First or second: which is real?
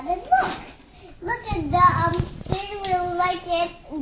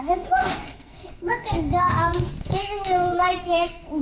first